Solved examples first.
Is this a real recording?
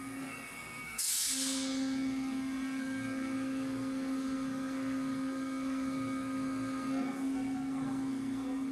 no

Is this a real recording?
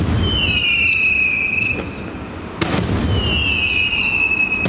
yes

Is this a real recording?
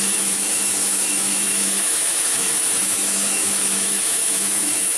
no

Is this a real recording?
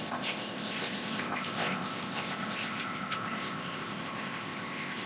no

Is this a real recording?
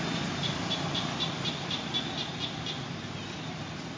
yes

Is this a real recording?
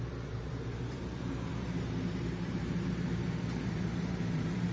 no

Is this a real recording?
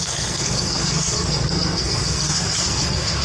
no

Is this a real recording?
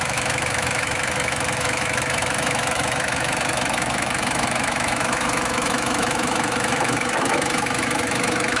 no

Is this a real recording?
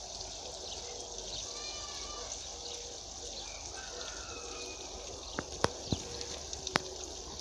yes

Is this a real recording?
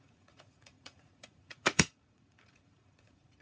no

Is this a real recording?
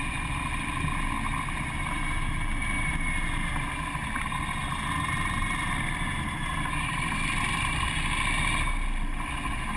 yes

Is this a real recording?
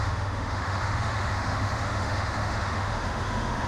no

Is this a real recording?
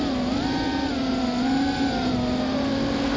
yes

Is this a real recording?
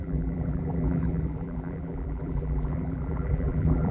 no